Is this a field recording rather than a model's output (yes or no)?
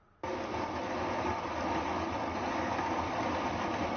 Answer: yes